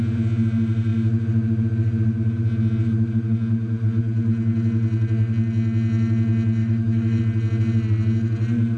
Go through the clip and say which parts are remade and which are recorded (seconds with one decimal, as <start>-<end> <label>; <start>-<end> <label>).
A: 0.0-6.6 recorded; 6.6-7.2 remade; 7.2-8.8 recorded